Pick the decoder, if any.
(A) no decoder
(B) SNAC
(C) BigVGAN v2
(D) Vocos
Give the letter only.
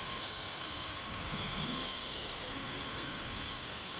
B